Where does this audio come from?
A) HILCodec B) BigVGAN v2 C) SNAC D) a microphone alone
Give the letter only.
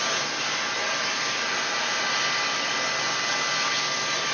D